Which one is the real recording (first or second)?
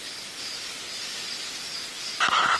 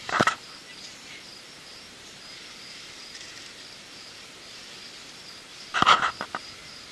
first